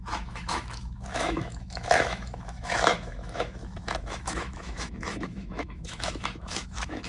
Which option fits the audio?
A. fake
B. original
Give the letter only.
A